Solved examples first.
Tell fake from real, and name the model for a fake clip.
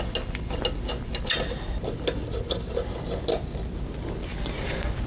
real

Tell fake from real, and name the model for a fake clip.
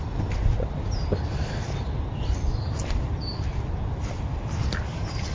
real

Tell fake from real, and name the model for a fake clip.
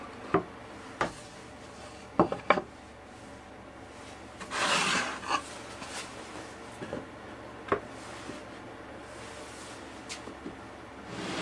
real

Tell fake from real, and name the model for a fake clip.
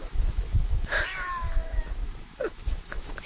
fake, autoencoder, DAC-VAE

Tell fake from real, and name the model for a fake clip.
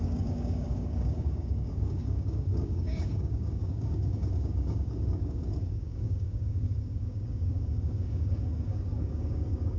fake, codec, DAC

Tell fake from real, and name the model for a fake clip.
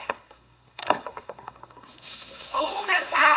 fake, codec, SNAC